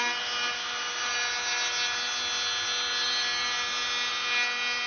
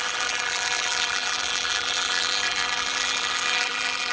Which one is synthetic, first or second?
second